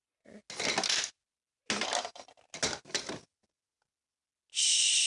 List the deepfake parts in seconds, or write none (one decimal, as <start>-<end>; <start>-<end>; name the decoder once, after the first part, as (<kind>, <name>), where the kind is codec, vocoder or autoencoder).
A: none